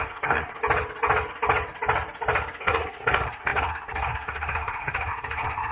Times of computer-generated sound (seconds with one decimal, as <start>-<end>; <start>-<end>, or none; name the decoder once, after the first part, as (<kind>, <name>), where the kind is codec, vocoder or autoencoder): 0.0-0.6 (codec, SNAC); 2.6-5.7